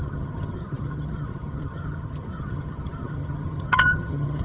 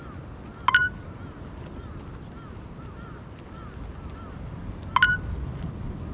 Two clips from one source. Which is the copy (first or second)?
first